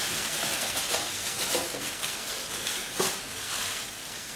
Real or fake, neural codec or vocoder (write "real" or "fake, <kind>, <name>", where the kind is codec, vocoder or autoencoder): fake, codec, SNAC